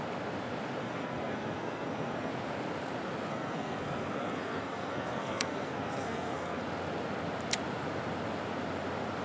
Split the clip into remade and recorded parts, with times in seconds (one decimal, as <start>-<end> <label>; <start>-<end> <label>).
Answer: 0.0-0.8 recorded; 0.8-2.3 remade; 2.3-3.3 recorded; 3.3-6.6 remade; 6.6-9.2 recorded